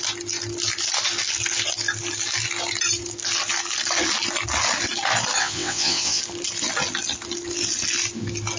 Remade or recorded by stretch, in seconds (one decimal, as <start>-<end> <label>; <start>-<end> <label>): 0.0-5.4 recorded; 5.4-6.2 remade; 6.2-8.6 recorded